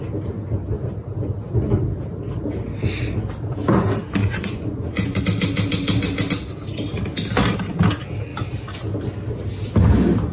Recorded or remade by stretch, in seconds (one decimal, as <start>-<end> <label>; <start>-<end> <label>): 0.0-4.2 recorded; 4.2-5.2 remade; 5.2-10.3 recorded